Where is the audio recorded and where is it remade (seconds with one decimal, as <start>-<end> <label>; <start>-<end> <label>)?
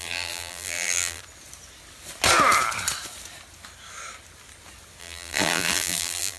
0.0-1.2 remade; 1.2-5.0 recorded; 5.0-6.4 remade